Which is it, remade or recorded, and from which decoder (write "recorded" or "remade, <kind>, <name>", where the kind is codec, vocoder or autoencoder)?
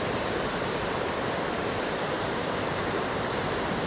remade, vocoder, BigVGAN v2